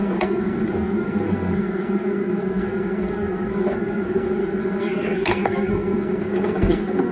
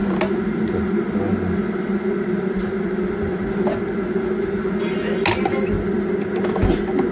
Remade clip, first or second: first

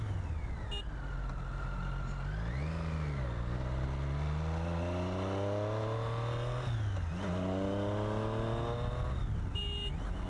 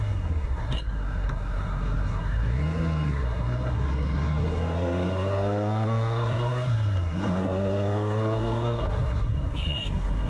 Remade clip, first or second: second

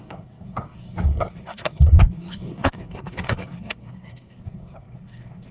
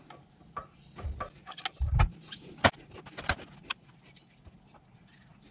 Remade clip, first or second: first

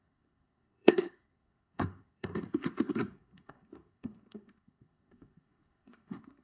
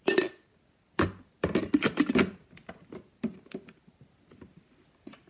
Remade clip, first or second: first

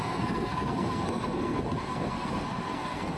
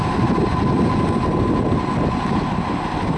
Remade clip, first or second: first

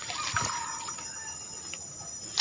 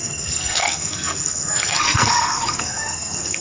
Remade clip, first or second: second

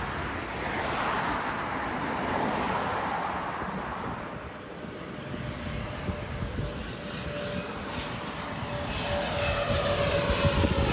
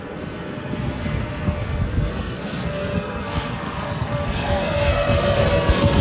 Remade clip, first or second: second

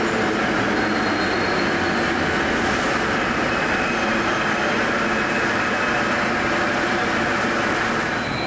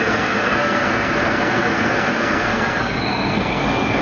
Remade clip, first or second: second